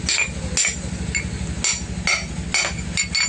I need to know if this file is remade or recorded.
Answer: recorded